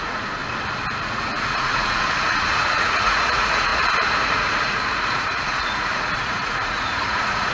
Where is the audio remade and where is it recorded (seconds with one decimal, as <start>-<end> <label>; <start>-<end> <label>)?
0.0-0.4 remade; 0.4-1.0 recorded; 1.0-7.5 remade